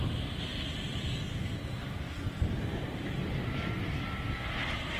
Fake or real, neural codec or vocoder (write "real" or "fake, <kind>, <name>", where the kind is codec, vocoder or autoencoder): real